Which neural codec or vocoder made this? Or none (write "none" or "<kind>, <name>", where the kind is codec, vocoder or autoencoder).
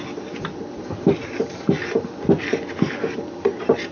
none